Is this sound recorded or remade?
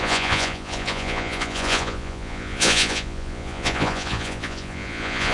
remade